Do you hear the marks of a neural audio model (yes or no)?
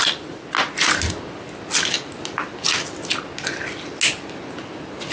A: no